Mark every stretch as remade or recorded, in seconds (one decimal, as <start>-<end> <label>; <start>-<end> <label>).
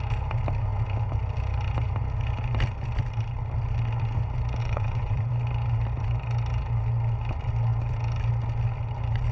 0.0-4.6 recorded; 4.6-5.3 remade; 5.3-9.3 recorded